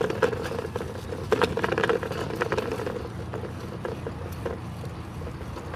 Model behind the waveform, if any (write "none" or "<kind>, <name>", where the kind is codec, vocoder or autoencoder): none